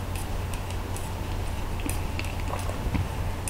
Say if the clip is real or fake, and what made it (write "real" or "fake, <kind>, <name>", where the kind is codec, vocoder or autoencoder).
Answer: real